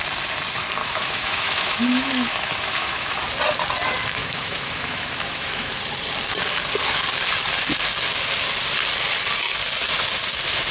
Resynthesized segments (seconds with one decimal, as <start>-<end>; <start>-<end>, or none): 0.8-3.2; 4.2-5.7